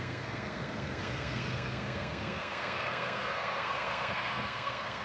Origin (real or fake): fake